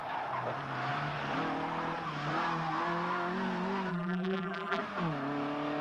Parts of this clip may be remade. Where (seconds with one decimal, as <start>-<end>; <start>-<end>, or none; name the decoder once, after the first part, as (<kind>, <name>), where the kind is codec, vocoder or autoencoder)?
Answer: 3.9-4.8 (vocoder, BigVGAN v2)